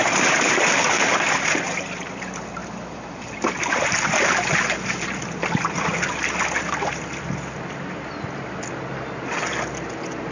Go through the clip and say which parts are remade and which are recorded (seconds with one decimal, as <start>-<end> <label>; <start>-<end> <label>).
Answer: 0.0-10.3 recorded